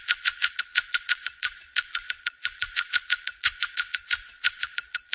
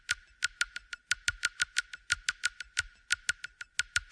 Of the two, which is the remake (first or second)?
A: first